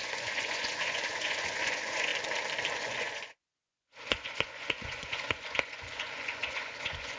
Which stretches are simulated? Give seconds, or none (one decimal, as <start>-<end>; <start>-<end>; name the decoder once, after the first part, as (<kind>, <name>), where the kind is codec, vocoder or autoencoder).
0.0-2.1 (vocoder, Vocos); 2.7-7.2